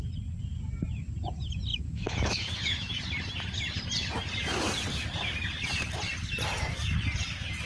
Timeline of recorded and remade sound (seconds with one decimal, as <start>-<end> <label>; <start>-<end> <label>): 0.0-1.7 recorded; 1.7-3.0 remade; 3.0-7.7 recorded